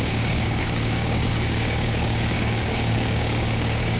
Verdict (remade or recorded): remade